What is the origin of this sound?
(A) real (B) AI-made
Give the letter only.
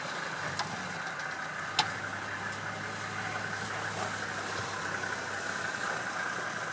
A